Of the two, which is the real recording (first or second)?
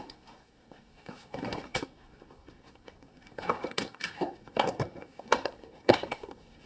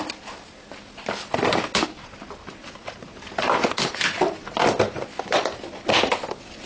second